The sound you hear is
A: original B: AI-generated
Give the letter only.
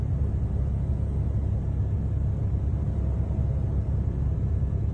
A